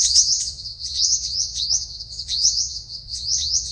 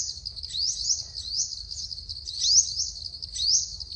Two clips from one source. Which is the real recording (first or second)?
second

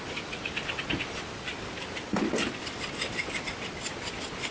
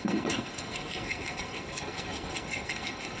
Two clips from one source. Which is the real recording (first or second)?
first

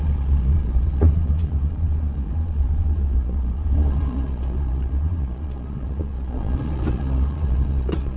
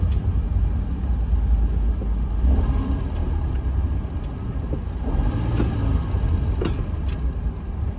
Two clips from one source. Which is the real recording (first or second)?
second